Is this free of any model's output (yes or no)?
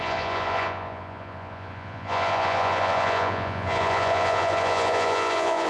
no